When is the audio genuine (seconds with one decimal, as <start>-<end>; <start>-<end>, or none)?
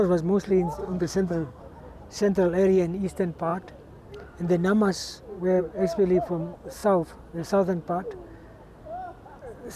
0.0-0.8; 1.6-9.8